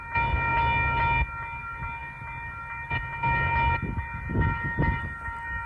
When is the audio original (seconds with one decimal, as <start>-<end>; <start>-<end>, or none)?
0.0-5.7